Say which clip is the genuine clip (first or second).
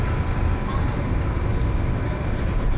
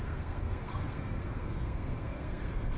first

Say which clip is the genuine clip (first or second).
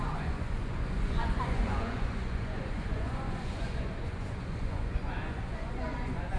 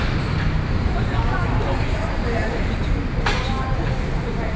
second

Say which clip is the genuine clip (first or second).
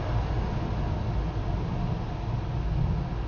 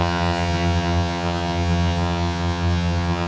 first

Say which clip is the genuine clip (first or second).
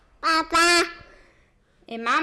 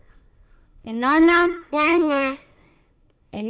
first